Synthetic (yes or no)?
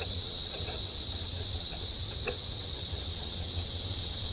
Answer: yes